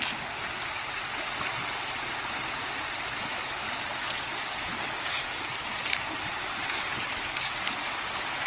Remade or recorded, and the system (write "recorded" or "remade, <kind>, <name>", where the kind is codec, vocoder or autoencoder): recorded